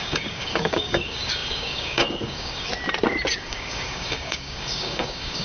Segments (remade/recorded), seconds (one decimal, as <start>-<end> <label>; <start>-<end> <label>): 0.0-2.7 remade; 2.7-3.4 recorded; 3.4-5.4 remade